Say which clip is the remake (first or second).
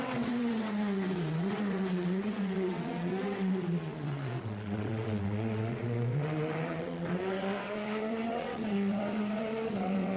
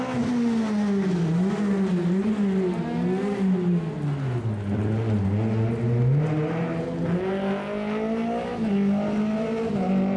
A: first